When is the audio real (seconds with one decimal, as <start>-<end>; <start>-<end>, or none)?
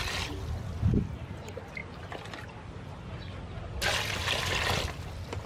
0.0-5.5